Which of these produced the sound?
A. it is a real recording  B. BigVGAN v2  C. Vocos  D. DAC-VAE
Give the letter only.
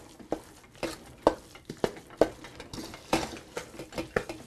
A